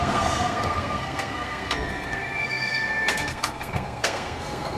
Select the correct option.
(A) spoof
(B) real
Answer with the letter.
A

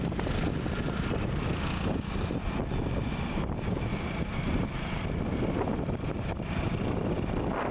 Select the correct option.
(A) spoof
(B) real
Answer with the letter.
B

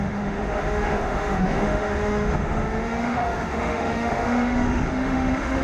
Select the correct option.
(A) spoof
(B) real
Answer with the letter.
A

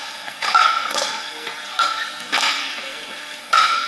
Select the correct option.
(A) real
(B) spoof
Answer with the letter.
B